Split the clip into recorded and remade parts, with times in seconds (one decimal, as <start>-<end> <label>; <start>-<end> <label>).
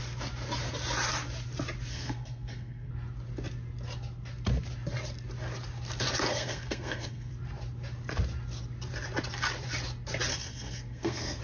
0.0-1.9 recorded; 1.9-2.9 remade; 2.9-6.3 recorded; 6.3-7.3 remade; 7.3-10.3 recorded; 10.3-11.4 remade